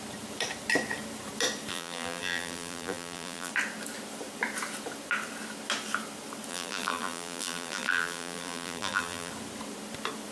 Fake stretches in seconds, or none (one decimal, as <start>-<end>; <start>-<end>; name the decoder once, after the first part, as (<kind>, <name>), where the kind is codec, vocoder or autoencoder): 1.7-3.5 (vocoder, BigVGAN v2); 6.5-9.3